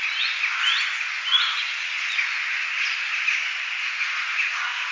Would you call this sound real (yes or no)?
yes